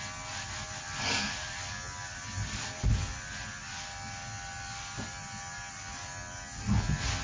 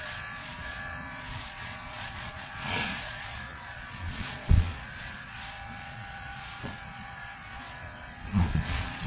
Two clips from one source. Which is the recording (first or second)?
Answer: first